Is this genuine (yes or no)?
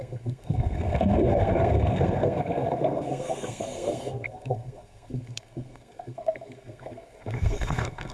no